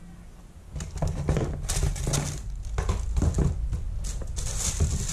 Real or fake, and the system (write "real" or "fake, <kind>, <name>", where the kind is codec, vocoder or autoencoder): real